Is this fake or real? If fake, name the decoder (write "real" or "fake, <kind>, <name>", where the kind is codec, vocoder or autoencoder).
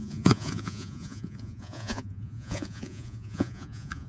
fake, vocoder, Vocos